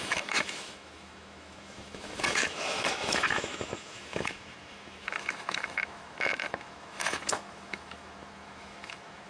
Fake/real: fake